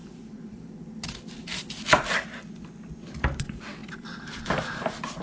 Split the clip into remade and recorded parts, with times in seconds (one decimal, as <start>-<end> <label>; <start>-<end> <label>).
0.0-0.7 remade; 0.7-1.4 recorded; 1.4-2.4 remade; 2.4-3.8 recorded; 3.8-5.2 remade

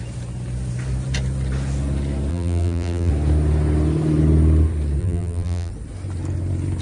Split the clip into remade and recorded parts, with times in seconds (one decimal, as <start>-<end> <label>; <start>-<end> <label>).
0.0-2.3 recorded; 2.3-3.1 remade; 3.1-5.0 recorded; 5.0-5.7 remade; 5.7-6.8 recorded

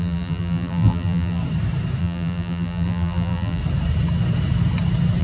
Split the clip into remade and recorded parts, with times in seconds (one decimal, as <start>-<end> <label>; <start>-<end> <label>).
0.0-1.4 remade; 1.4-2.0 recorded; 2.0-3.6 remade; 3.6-5.2 recorded

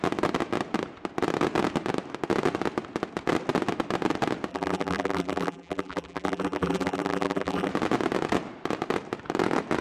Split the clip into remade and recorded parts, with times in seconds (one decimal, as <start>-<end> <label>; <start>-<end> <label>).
0.0-4.5 recorded; 4.5-7.7 remade; 7.7-9.8 recorded

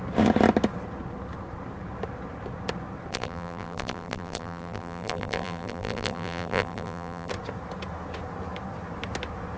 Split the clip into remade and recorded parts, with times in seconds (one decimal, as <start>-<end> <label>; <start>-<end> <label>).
0.0-3.1 recorded; 3.1-7.3 remade; 7.3-9.6 recorded

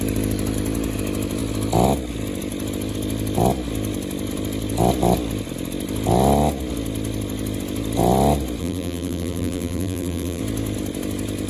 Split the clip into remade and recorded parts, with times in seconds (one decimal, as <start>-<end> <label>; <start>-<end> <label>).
0.0-8.6 recorded; 8.6-10.4 remade; 10.4-11.5 recorded

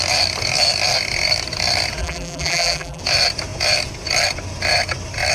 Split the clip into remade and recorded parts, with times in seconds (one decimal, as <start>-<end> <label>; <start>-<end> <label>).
0.0-2.0 recorded; 2.0-3.0 remade; 3.0-5.3 recorded

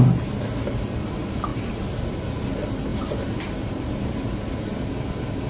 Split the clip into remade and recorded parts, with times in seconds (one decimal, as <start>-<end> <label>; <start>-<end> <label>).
0.0-1.5 recorded; 1.5-2.2 remade; 2.2-2.9 recorded; 2.9-4.2 remade; 4.2-5.5 recorded